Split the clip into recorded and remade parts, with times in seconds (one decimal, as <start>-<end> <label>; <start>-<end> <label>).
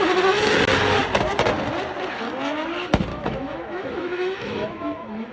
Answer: 0.0-3.1 recorded; 3.1-5.3 remade